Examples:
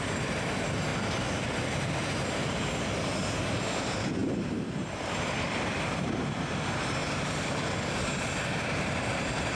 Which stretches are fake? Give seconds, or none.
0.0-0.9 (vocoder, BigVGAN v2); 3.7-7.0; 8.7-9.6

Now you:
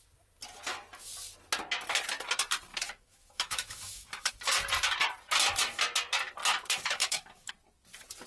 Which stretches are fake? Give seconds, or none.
2.7-4.3 (autoencoder, DAC-VAE); 6.4-7.5

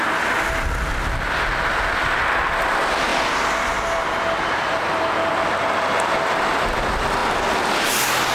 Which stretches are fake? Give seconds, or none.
none

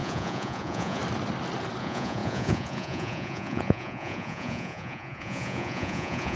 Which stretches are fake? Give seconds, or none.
0.0-1.0 (vocoder, Vocos); 1.8-6.4